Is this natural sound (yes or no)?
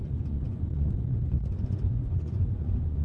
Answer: no